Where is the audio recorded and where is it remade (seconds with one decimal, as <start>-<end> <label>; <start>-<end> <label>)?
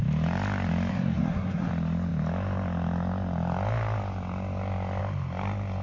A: 0.0-0.9 recorded; 0.9-1.7 remade; 1.7-5.8 recorded